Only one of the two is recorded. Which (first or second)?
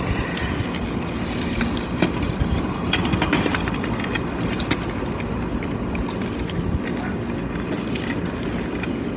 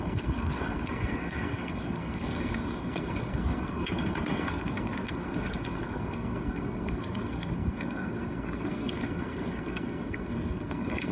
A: first